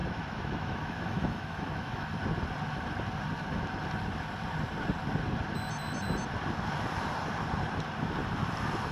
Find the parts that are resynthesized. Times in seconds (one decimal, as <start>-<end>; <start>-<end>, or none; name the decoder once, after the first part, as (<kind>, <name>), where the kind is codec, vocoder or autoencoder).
0.0-2.2 (autoencoder, DAC-VAE)